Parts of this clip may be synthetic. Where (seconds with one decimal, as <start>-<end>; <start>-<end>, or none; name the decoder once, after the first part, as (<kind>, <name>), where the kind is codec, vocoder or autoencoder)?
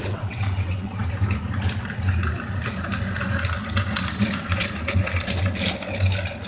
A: 0.0-1.0 (vocoder, WaveNeXt)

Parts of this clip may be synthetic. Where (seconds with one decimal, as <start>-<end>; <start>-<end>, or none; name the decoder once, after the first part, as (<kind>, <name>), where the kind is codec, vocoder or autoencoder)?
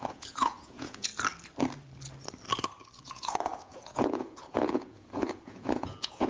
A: 0.0-1.1 (vocoder, Vocos); 3.0-6.3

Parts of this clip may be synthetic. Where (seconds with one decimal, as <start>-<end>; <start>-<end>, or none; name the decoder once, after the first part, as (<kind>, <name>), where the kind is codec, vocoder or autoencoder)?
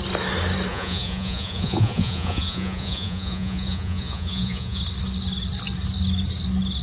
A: 0.7-4.8 (vocoder, Vocos)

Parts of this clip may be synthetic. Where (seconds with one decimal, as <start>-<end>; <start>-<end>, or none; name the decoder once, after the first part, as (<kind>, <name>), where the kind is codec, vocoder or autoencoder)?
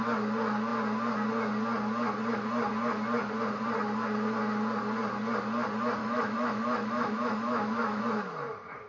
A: 6.0-8.0 (autoencoder, DAC-VAE)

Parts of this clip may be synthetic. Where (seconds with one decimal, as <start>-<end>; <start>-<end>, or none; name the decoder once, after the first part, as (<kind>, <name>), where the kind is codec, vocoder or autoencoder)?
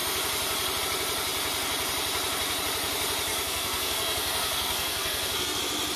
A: 3.3-5.6 (codec, SNAC)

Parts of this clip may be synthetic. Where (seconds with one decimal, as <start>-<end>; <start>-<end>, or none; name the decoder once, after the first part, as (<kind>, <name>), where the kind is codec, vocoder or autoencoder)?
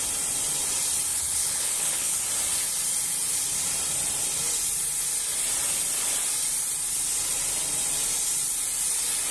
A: 1.1-2.2 (codec, HILCodec)